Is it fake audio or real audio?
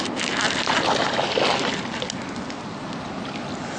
real